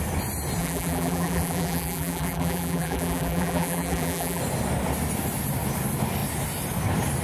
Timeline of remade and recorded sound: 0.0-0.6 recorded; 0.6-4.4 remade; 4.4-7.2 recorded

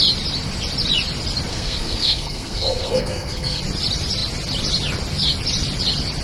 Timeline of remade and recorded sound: 0.0-1.5 recorded; 1.5-3.6 remade; 3.6-6.2 recorded

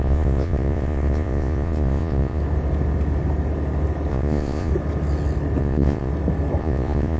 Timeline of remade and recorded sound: 0.0-2.4 remade; 2.4-4.1 recorded; 4.1-4.7 remade; 4.7-5.6 recorded; 5.6-6.1 remade; 6.1-6.6 recorded; 6.6-7.2 remade

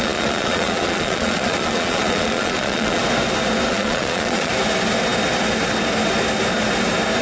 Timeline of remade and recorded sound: 0.0-3.0 remade; 3.0-3.7 recorded; 3.7-4.5 remade; 4.5-7.2 recorded

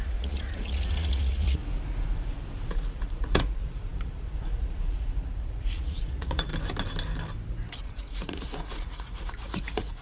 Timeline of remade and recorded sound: 0.0-1.6 remade; 1.6-2.7 recorded; 2.7-6.5 remade; 6.5-7.8 recorded; 7.8-10.0 remade

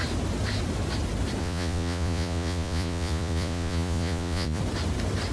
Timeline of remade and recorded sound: 0.0-1.4 recorded; 1.4-4.6 remade; 4.6-5.3 recorded

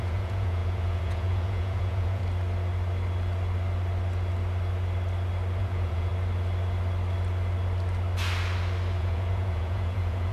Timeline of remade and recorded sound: 0.0-2.2 remade; 2.2-5.6 recorded; 5.6-6.1 remade; 6.1-9.0 recorded; 9.0-10.3 remade

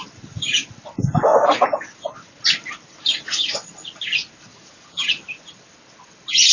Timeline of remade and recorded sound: 0.0-4.5 recorded; 4.5-5.1 remade; 5.1-6.5 recorded